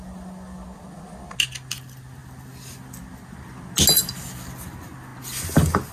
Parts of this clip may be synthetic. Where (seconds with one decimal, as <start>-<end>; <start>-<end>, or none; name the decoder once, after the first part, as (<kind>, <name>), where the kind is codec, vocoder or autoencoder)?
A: none